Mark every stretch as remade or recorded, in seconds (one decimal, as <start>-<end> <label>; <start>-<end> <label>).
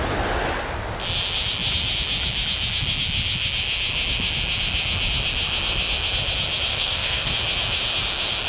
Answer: 0.0-6.7 recorded; 6.7-7.3 remade; 7.3-8.5 recorded